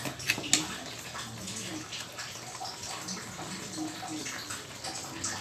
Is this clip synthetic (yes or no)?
no